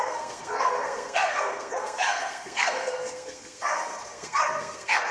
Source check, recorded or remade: remade